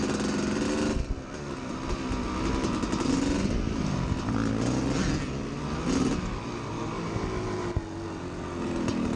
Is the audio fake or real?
real